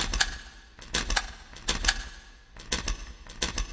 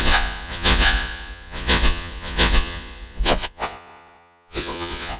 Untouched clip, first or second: first